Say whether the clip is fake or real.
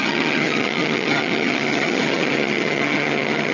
fake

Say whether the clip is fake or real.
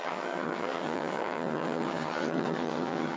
fake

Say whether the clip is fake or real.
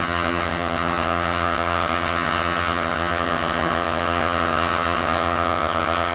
fake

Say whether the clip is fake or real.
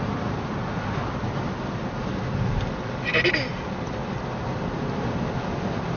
real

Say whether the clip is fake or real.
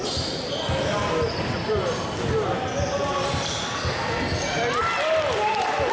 real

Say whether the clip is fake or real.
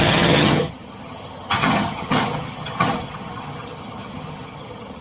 fake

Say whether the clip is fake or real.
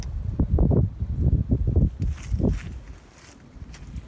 real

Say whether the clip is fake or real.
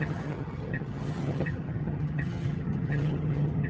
fake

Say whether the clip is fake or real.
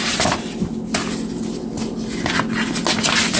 real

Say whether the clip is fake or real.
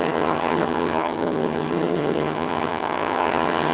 fake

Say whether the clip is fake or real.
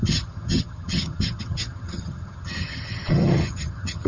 fake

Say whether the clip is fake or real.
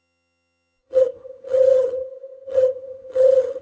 fake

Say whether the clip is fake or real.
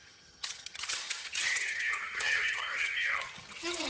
fake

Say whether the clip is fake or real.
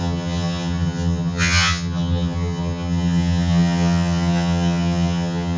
fake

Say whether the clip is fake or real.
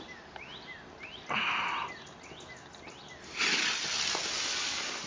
real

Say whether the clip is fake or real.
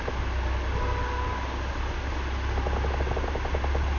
real